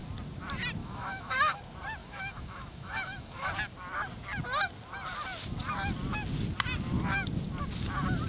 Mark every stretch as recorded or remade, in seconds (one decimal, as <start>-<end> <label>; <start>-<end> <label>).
0.0-0.8 recorded; 0.8-1.6 remade; 1.6-2.0 recorded; 2.0-3.5 remade; 3.5-8.3 recorded